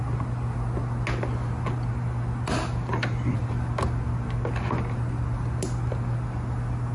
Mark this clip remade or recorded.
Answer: recorded